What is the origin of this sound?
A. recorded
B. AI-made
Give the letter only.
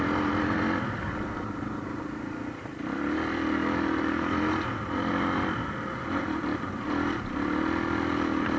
B